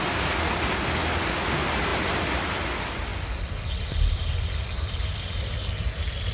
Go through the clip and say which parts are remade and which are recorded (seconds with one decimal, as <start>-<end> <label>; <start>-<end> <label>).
0.0-6.3 recorded